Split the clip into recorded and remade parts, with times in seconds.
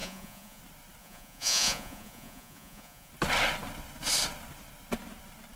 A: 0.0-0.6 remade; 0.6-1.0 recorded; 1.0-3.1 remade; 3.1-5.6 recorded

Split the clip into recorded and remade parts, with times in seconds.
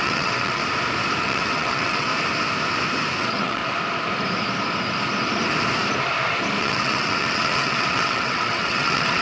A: 0.0-0.6 remade; 0.6-1.2 recorded; 1.2-2.1 remade; 2.1-3.2 recorded; 3.2-3.6 remade; 3.6-6.6 recorded; 6.6-9.2 remade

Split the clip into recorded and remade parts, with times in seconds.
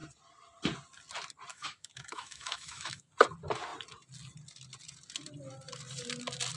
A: 0.0-1.5 recorded; 1.5-3.1 remade; 3.1-6.6 recorded